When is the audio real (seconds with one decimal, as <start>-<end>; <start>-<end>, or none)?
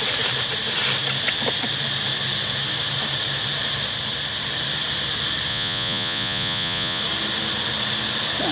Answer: 0.0-5.5; 7.0-8.5